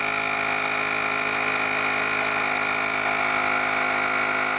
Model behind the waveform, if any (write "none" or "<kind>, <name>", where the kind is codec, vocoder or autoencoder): none